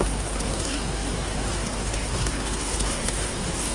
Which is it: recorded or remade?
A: remade